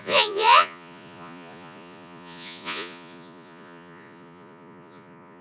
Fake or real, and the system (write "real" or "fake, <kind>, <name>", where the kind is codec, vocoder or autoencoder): fake, vocoder, Vocos